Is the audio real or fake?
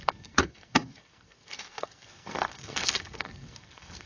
fake